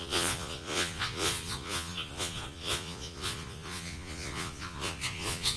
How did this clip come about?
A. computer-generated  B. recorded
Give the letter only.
A